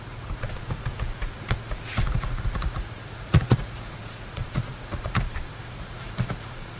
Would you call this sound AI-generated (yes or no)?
yes